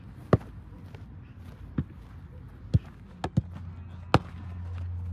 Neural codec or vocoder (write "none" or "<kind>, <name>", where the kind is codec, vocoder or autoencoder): none